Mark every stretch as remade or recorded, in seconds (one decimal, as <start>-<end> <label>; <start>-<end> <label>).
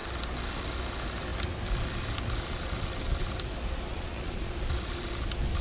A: 0.0-3.9 recorded; 3.9-4.5 remade; 4.5-5.6 recorded